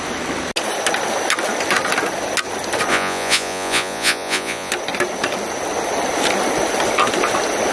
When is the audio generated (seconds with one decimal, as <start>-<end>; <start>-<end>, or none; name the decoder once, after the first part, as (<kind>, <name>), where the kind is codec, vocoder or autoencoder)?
2.9-4.7 (vocoder, Vocos)